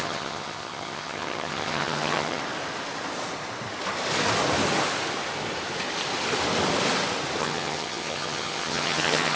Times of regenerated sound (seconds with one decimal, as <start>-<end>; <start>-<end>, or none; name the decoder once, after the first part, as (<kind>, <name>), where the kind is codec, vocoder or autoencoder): 0.0-2.4 (vocoder, HiFi-GAN); 7.4-9.4